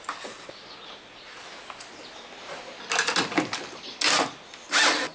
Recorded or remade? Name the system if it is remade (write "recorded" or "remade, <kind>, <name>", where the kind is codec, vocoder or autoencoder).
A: recorded